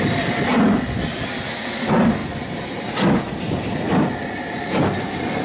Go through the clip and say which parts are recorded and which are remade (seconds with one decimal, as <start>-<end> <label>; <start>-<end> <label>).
0.0-5.4 recorded